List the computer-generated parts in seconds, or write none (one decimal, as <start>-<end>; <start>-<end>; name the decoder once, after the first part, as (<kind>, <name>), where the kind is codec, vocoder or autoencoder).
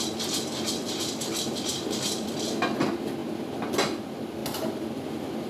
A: 1.7-2.3 (vocoder, BigVGAN v2)